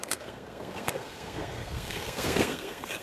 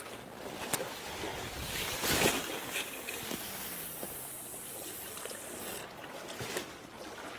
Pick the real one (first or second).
second